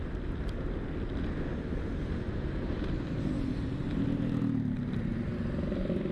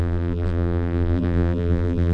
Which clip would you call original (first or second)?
first